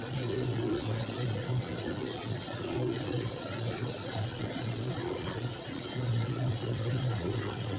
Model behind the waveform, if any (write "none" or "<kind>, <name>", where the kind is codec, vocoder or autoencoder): vocoder, Vocos